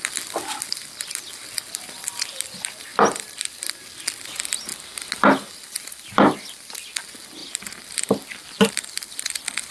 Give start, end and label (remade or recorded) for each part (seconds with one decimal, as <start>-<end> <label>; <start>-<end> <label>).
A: 0.0-9.7 recorded